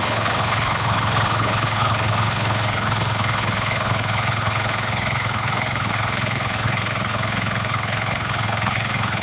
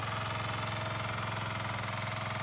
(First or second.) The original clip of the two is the second